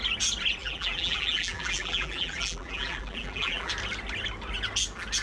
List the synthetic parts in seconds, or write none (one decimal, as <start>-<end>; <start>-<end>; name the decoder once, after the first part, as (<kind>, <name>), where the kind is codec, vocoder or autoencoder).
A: 0.6-3.7 (vocoder, BigVGAN v2)